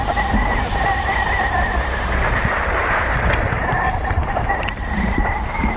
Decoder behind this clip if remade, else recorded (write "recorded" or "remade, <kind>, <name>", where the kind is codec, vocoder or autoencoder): recorded